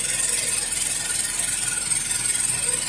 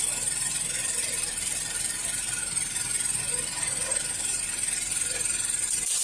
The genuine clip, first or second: first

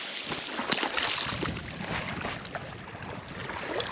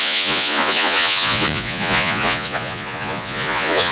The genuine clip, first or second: first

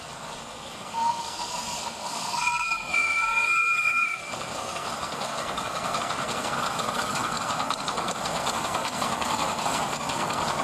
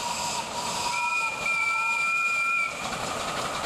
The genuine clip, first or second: second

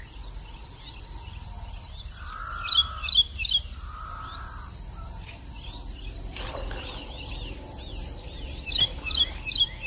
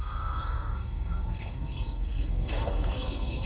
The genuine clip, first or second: first